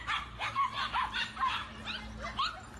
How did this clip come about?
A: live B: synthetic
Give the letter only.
A